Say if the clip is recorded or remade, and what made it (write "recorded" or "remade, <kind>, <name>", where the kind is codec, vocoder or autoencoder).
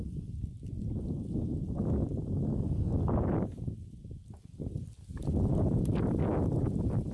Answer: recorded